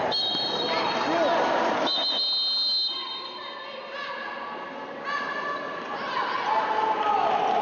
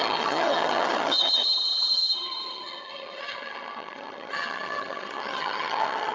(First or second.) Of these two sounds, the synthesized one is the second